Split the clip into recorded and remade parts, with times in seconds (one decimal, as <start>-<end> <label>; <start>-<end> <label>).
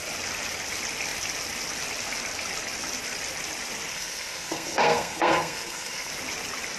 0.0-3.9 recorded; 3.9-6.1 remade; 6.1-6.8 recorded